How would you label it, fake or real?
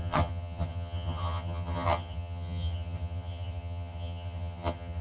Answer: fake